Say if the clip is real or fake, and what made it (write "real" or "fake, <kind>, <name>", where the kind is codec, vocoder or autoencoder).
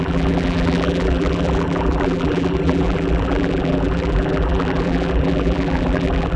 fake, vocoder, BigVGAN v2